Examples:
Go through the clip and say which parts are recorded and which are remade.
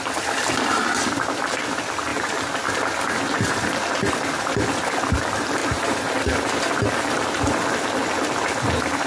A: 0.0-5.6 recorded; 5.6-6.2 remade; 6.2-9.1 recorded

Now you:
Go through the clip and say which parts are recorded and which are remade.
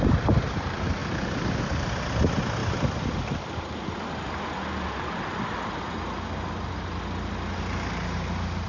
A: 0.0-1.0 recorded; 1.0-1.6 remade; 1.6-8.7 recorded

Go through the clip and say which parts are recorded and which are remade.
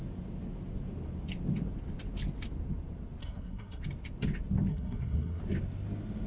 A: 0.0-3.2 recorded; 3.2-3.8 remade; 3.8-4.7 recorded; 4.7-5.4 remade; 5.4-6.3 recorded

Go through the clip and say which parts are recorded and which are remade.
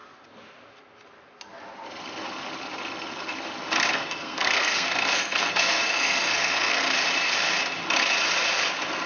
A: 0.0-3.9 recorded; 3.9-6.8 remade; 6.8-9.1 recorded